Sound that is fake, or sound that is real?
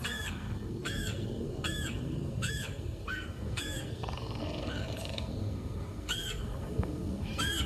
fake